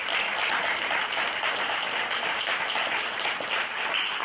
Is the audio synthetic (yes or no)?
no